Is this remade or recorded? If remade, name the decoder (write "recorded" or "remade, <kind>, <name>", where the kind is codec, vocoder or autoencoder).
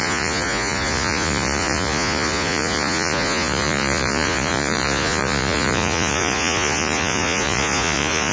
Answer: remade, vocoder, Vocos